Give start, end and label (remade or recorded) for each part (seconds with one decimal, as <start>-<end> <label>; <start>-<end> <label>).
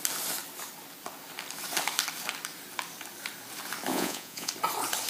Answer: 0.0-3.9 recorded; 3.9-4.5 remade; 4.5-5.1 recorded